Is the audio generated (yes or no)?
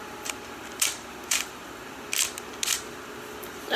no